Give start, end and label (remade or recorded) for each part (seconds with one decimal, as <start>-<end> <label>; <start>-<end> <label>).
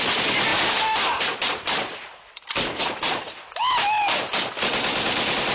0.0-5.5 recorded